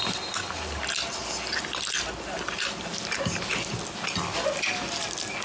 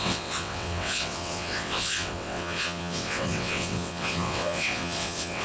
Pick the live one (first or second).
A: first